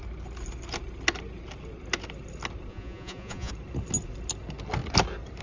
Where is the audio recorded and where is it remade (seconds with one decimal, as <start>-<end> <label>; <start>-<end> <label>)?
0.0-2.7 recorded; 2.7-3.5 remade; 3.5-5.4 recorded